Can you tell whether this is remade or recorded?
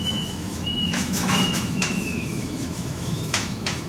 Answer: remade